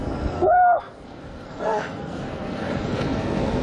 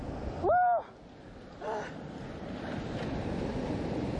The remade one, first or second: first